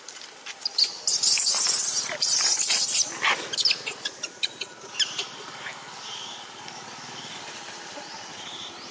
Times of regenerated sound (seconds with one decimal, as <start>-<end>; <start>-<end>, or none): 5.2-7.4